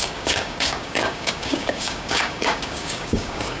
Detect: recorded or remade remade